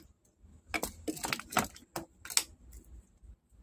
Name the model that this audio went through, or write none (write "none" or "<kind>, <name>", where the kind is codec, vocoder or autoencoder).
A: none